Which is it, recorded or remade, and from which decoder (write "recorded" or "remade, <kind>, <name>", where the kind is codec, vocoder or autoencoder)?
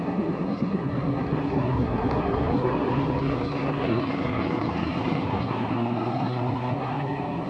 remade, codec, SNAC